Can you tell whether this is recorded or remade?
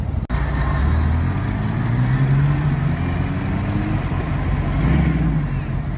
recorded